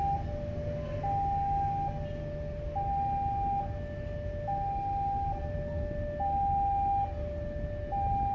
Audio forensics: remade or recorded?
recorded